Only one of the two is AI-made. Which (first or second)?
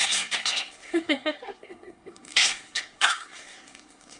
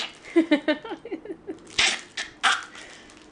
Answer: first